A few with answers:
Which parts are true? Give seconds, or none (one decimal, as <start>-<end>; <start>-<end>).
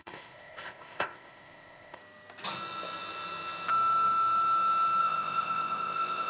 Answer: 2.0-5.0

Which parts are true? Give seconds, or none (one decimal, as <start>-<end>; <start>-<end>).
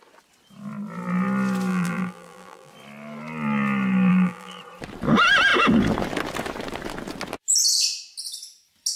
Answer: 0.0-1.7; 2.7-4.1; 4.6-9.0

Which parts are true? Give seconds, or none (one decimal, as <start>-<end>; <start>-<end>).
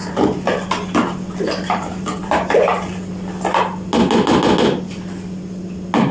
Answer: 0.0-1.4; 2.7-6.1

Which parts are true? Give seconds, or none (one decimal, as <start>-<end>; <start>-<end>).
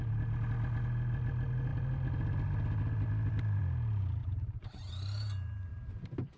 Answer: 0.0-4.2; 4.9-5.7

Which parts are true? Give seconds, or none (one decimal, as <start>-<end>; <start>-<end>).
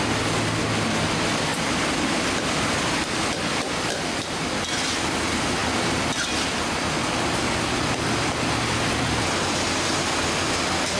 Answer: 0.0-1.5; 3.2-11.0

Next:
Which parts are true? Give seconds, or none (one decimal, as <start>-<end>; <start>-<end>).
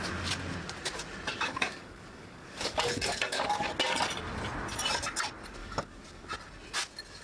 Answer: 0.0-1.3; 3.7-5.6; 6.3-7.2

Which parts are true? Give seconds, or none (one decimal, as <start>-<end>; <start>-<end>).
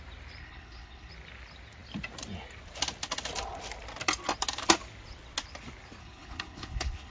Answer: 0.0-0.4; 1.1-6.0